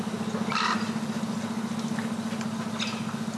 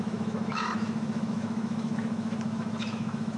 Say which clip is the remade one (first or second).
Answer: second